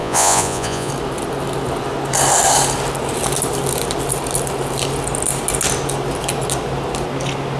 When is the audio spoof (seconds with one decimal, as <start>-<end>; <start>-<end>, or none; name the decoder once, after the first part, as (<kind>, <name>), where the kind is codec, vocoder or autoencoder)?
0.0-0.9 (vocoder, Vocos)